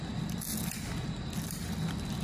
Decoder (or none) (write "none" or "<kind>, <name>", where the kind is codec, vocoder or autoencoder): none